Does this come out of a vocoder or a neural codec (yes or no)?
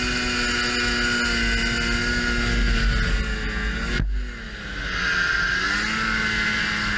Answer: no